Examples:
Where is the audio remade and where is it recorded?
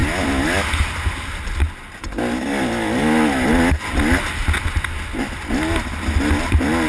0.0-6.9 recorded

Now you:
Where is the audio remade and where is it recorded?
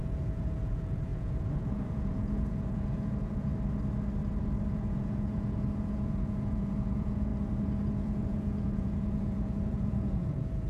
0.0-3.5 remade; 3.5-4.7 recorded; 4.7-7.3 remade; 7.3-7.9 recorded; 7.9-10.7 remade